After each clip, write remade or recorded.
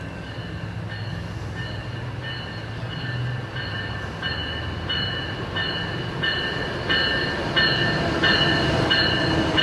recorded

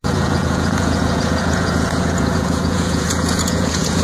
remade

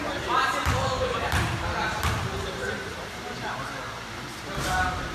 remade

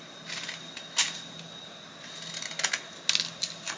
recorded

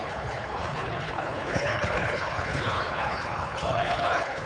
remade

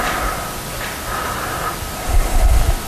recorded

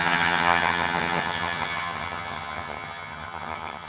remade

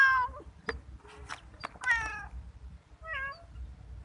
recorded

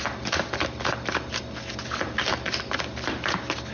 recorded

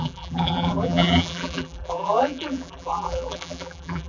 remade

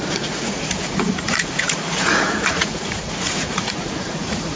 remade